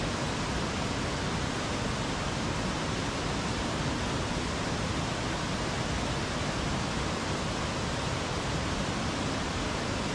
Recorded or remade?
recorded